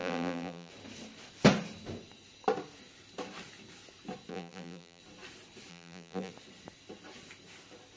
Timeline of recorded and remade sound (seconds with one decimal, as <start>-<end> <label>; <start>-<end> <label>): 0.0-0.7 remade; 0.7-4.3 recorded; 4.3-5.0 remade; 5.0-5.7 recorded; 5.7-6.3 remade; 6.3-8.0 recorded